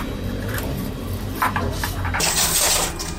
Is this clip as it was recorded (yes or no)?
yes